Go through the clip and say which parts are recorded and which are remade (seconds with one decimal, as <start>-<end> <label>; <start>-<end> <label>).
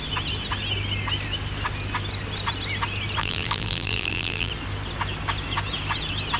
0.0-3.2 recorded; 3.2-4.5 remade; 4.5-6.4 recorded